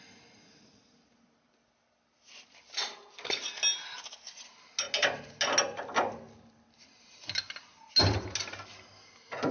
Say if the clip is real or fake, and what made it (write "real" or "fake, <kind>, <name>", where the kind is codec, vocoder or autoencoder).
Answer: real